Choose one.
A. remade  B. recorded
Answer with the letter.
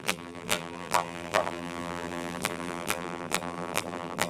A